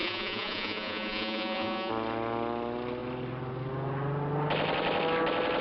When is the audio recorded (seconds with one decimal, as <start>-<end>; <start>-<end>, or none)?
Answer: 1.9-5.6